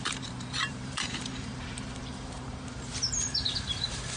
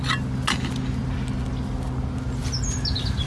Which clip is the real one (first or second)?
second